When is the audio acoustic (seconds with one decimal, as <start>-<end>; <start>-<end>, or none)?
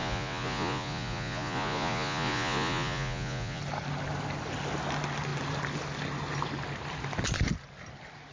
3.6-8.3